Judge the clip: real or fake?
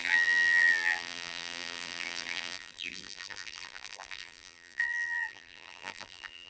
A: fake